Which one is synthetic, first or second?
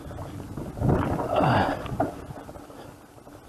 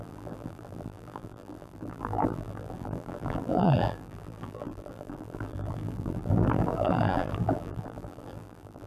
second